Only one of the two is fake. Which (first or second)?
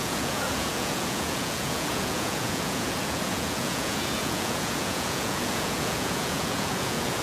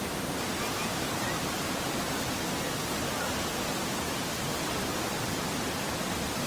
first